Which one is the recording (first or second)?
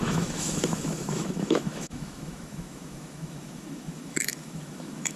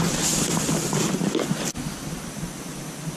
second